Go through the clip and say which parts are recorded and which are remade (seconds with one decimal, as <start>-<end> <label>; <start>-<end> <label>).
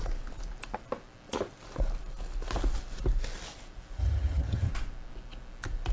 0.0-4.0 recorded; 4.0-4.7 remade; 4.7-5.9 recorded